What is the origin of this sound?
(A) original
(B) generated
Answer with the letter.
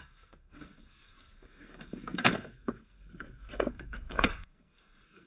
B